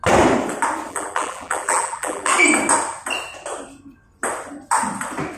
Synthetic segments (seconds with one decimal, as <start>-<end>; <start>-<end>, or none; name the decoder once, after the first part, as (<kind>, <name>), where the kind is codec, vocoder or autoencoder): 0.9-2.3 (vocoder, BigVGAN v2)